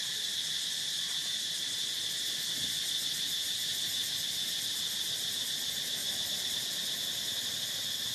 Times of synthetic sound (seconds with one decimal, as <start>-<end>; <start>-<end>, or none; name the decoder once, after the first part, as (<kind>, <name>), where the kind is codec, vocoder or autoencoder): none

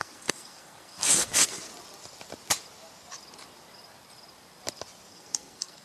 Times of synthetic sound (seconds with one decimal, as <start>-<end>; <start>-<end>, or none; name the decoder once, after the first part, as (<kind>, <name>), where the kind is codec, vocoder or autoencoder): 0.0-1.7 (codec, SNAC); 5.1-5.8

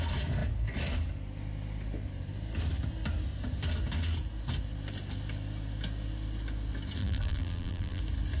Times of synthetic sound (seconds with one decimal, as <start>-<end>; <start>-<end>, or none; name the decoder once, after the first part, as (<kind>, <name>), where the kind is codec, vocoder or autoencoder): 7.0-8.0 (vocoder, BigVGAN v2)